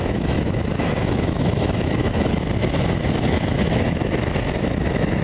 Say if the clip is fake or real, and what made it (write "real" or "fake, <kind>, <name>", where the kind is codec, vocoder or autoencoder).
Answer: fake, autoencoder, DAC-VAE